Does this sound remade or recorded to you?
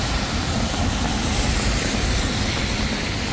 recorded